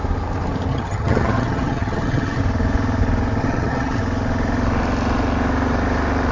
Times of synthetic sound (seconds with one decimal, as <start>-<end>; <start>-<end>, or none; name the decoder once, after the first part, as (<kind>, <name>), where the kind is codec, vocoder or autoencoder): 0.7-2.4 (vocoder, HiFi-GAN); 3.4-4.0

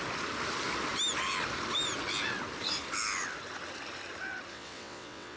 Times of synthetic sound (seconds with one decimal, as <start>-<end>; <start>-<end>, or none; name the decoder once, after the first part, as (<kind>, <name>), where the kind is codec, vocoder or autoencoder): 4.5-5.4 (vocoder, WaveNeXt)

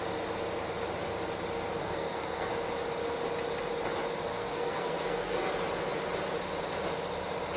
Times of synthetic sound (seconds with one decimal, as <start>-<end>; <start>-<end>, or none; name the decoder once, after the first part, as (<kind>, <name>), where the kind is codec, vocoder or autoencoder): 1.8-2.5 (codec, SNAC); 4.3-5.5